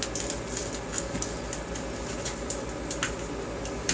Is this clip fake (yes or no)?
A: no